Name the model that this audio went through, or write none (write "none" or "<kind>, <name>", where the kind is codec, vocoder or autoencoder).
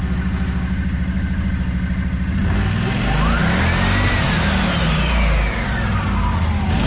none